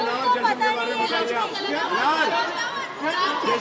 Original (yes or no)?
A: yes